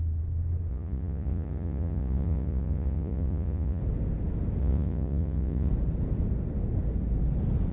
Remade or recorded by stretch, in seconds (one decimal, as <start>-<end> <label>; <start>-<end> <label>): 0.0-0.7 recorded; 0.7-3.8 remade; 3.8-4.6 recorded; 4.6-5.7 remade; 5.7-7.7 recorded